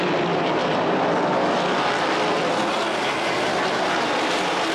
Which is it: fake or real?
real